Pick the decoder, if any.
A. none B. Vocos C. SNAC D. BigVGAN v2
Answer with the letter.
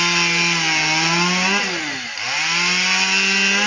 A